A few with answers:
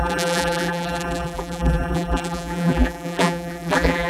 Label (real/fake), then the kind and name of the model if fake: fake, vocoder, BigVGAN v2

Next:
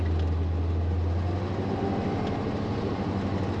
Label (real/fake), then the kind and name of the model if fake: real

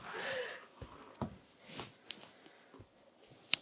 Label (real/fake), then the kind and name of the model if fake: real